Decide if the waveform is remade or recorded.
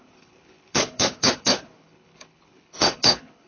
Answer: remade